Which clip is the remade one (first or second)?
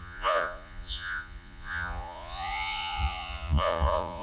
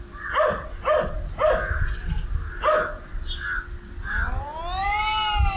first